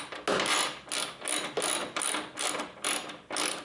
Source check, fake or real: real